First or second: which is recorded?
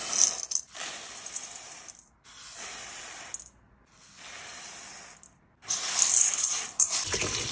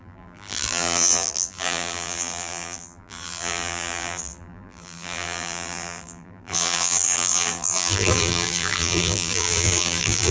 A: first